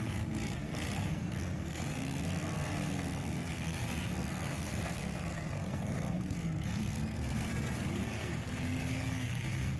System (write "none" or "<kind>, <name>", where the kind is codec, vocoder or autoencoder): codec, SNAC